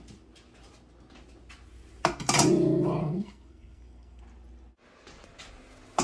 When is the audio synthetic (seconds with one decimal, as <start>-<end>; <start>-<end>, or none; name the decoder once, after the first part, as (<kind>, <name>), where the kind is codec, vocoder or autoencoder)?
3.0-4.2 (codec, SNAC)